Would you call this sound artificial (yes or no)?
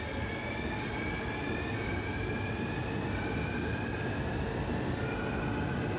no